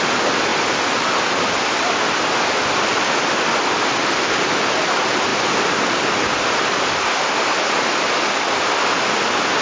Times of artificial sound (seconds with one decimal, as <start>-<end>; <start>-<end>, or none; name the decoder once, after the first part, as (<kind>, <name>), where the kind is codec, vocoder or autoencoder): none

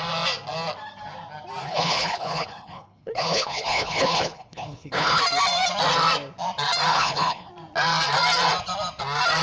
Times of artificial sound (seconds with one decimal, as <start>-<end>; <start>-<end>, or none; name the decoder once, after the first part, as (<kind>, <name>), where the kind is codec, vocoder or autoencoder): 1.6-5.2 (codec, HILCodec); 6.9-7.5

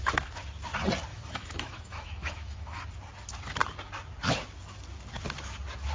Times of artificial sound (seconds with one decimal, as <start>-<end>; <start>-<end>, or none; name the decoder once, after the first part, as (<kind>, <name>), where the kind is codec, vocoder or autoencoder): 1.1-2.8 (autoencoder, DAC-VAE)

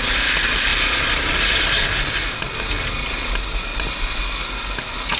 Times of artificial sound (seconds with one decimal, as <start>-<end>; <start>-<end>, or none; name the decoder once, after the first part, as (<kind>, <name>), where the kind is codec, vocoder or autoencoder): none

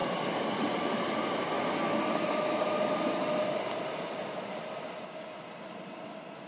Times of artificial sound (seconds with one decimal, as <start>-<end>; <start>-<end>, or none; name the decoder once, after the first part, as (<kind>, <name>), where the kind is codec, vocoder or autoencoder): none

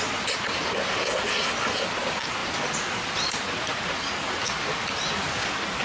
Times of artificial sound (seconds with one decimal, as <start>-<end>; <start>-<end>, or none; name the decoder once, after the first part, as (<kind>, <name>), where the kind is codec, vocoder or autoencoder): none

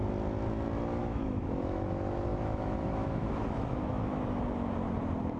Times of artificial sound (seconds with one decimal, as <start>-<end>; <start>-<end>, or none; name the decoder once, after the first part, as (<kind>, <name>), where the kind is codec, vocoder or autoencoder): 1.0-4.2 (autoencoder, DAC-VAE)

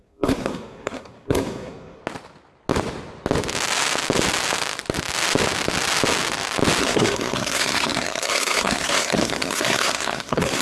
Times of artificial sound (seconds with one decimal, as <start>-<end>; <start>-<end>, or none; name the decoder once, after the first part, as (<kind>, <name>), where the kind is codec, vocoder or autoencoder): 0.0-2.0 (codec, SNAC); 6.8-10.6